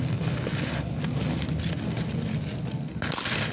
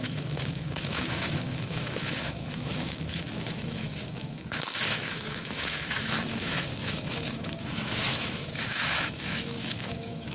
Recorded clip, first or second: first